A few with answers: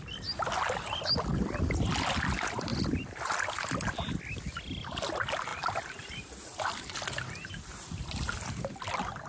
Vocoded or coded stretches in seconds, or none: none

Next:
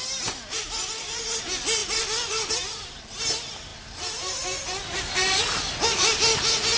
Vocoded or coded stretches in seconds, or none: none

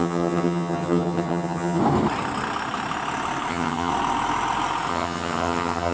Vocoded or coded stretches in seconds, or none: 0.0-1.8 (vocoder, HiFi-GAN); 3.5-3.9; 4.9-5.9

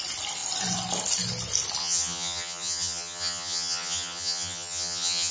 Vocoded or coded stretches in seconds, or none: 1.8-5.3 (vocoder, HiFi-GAN)

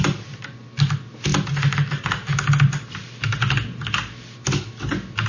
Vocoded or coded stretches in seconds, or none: none